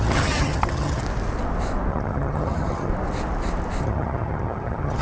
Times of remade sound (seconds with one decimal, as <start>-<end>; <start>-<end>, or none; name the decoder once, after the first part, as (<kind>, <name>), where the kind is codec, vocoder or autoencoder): 0.0-1.0 (vocoder, HiFi-GAN); 1.9-2.9; 3.8-5.0